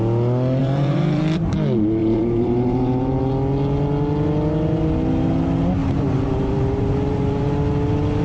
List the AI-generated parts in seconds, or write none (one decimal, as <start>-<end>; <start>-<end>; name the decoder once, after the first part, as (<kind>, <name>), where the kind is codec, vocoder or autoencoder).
0.6-1.2 (vocoder, BigVGAN v2); 2.0-3.3; 5.8-7.5